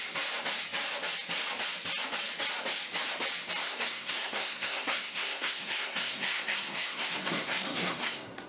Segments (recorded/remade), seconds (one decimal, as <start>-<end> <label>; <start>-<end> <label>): 0.0-3.6 recorded; 3.6-8.5 remade